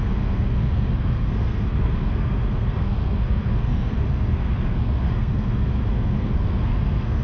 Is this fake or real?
fake